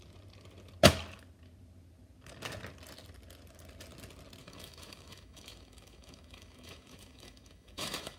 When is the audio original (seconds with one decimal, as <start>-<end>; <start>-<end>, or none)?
0.0-4.4